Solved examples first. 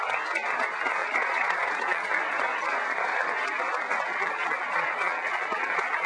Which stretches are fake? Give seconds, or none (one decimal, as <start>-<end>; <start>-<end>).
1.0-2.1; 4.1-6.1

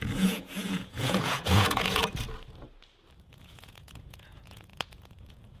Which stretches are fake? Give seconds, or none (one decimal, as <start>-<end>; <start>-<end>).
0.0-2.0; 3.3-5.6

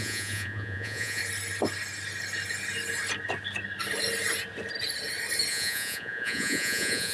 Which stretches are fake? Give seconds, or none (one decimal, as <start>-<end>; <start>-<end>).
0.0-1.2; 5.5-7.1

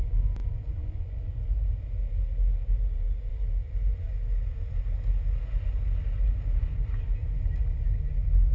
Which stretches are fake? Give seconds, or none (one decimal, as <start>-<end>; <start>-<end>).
0.4-1.3

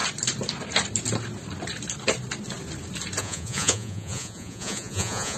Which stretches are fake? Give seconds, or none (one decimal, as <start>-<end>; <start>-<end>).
3.2-5.4

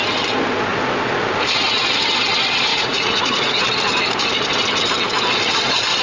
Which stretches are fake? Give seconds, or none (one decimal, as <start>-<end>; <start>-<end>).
2.7-3.6

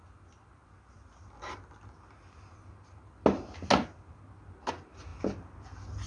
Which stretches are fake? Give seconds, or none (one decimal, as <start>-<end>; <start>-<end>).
none